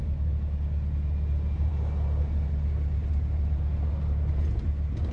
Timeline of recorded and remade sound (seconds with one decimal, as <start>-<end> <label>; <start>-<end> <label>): 0.0-5.1 recorded